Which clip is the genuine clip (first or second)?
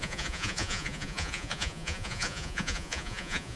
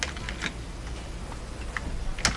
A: second